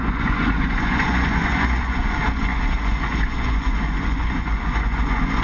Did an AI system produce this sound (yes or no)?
yes